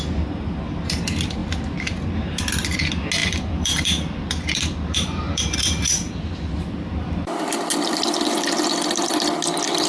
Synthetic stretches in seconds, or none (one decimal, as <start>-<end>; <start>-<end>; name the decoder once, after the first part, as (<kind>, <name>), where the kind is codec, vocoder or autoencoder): 3.2-7.5 (vocoder, BigVGAN v2)

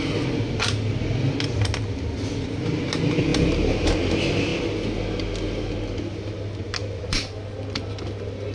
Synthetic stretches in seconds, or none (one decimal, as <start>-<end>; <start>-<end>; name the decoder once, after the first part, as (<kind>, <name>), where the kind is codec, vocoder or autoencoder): none